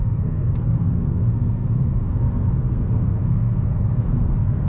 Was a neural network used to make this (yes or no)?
yes